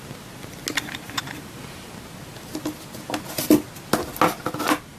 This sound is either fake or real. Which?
real